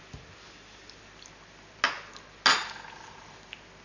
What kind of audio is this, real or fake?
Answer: real